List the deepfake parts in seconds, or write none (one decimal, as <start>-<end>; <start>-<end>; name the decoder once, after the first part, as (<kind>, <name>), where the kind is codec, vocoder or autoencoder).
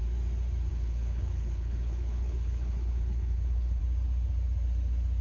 0.7-3.8 (codec, HILCodec)